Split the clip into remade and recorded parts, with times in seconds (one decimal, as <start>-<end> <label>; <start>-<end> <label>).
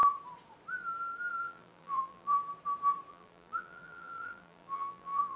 0.0-1.4 recorded; 1.4-2.4 remade; 2.4-3.1 recorded; 3.1-5.4 remade